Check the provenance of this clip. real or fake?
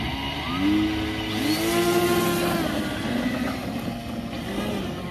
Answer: real